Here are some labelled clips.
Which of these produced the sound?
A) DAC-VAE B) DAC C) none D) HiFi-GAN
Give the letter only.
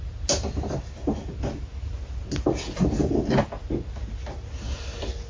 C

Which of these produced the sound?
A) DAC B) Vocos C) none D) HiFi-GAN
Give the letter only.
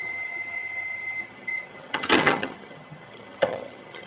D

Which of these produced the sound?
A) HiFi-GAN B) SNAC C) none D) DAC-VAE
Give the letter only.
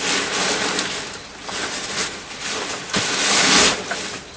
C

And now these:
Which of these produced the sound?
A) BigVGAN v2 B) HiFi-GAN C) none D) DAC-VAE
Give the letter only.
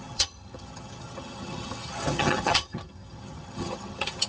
B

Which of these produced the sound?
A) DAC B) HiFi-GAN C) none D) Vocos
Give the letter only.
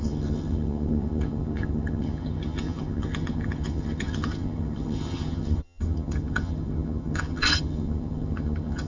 B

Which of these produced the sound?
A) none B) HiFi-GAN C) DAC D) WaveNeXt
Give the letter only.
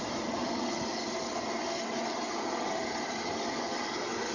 A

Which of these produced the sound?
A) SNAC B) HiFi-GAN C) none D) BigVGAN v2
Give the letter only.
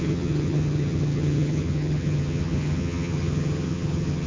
B